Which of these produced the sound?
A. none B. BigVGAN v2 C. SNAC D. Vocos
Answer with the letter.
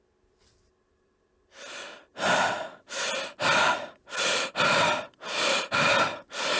A